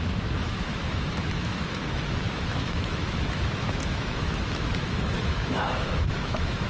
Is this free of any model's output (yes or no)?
no